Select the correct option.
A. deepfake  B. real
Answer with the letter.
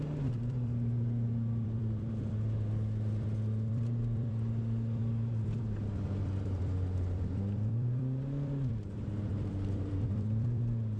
A